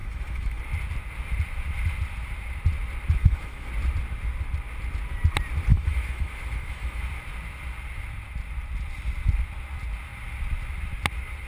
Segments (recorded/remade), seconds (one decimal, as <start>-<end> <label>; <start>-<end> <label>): 0.0-0.6 remade; 0.6-3.2 recorded; 3.2-3.7 remade; 3.7-5.7 recorded; 5.7-7.0 remade; 7.0-11.5 recorded